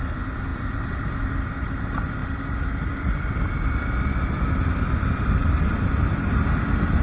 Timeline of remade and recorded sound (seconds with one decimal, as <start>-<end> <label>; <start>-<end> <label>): 0.0-7.0 recorded